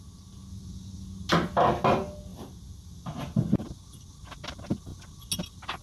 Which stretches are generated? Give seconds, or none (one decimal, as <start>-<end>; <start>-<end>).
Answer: 2.3-3.6